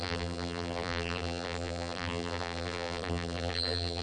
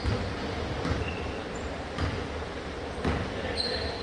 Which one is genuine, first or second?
second